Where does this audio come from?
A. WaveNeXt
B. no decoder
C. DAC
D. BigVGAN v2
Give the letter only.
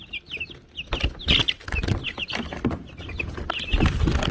B